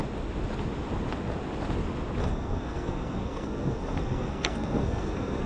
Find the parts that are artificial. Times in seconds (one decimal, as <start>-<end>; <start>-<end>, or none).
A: 2.2-5.5